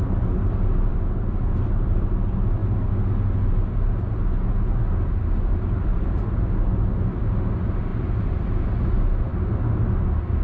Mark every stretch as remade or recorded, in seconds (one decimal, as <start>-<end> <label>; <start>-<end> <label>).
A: 0.0-0.9 recorded; 0.9-2.1 remade; 2.1-10.4 recorded

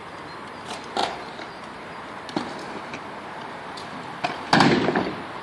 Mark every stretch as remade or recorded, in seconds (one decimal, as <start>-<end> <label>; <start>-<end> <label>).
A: 0.0-1.0 recorded; 1.0-1.8 remade; 1.8-5.4 recorded

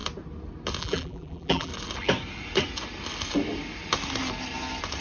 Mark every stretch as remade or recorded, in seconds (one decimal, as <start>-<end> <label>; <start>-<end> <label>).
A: 0.0-0.8 recorded; 0.8-1.7 remade; 1.7-5.0 recorded

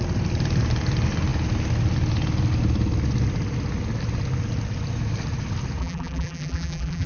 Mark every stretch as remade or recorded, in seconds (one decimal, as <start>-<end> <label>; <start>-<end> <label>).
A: 0.0-5.8 recorded; 5.8-7.1 remade

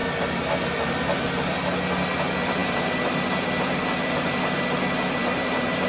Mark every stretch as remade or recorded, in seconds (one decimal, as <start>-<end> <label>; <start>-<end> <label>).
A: 0.0-5.9 recorded